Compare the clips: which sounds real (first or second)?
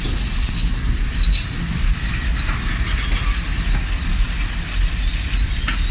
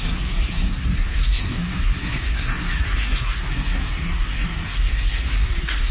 first